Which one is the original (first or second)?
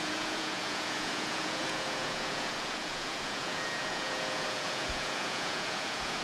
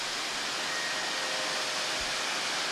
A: second